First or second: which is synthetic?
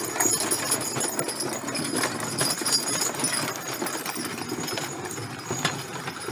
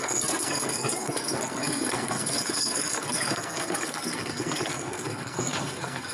second